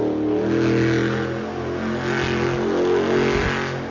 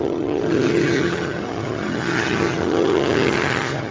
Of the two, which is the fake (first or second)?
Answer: second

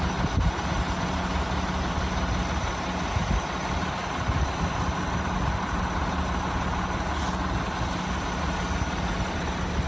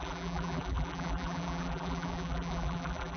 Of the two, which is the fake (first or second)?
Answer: second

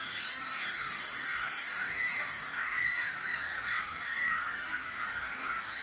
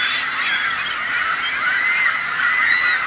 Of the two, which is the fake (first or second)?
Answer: first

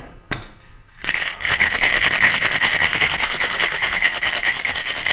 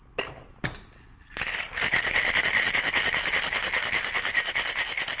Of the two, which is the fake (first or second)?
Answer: first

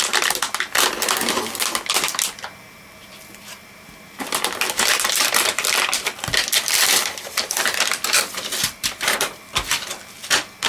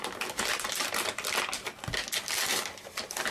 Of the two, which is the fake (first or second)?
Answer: first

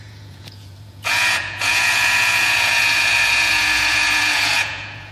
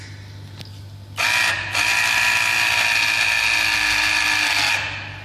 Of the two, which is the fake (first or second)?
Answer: first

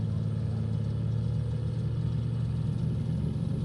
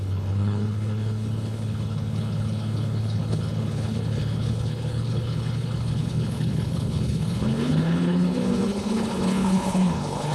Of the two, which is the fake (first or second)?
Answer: second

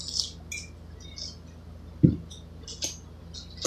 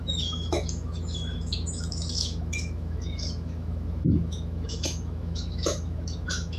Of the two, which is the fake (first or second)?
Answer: second